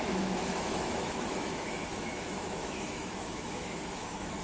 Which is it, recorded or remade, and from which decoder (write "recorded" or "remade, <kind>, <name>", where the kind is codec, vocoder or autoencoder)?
remade, autoencoder, DAC-VAE